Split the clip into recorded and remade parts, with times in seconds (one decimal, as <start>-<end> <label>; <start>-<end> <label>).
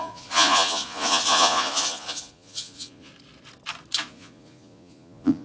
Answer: 0.0-3.1 remade; 3.1-4.0 recorded; 4.0-5.4 remade